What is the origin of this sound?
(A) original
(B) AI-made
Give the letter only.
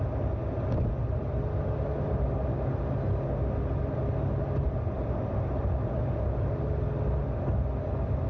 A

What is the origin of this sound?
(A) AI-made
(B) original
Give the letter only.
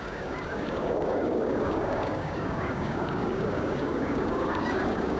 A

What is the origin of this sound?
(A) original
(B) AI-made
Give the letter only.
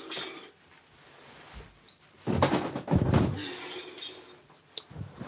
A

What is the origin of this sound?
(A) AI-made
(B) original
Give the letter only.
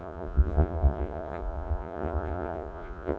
A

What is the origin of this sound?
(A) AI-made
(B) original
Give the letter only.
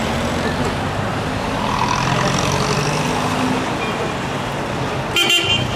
B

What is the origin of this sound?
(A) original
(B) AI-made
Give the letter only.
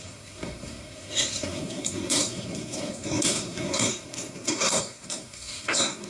B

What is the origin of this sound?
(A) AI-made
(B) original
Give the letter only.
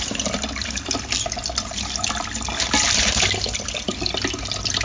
B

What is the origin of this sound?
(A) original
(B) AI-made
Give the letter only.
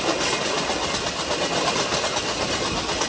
A